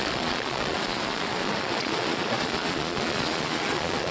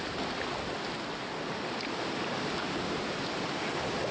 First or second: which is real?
second